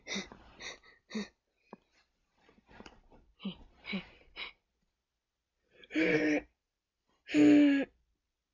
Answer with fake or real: real